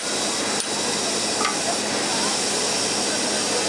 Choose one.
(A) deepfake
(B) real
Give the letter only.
B